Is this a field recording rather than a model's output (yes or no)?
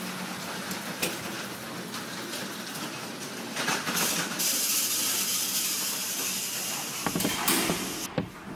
yes